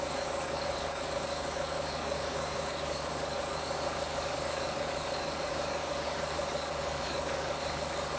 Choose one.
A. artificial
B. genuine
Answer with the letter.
A